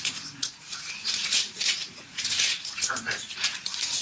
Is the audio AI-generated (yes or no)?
yes